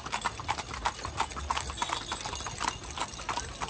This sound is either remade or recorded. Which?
recorded